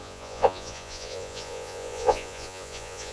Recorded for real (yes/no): no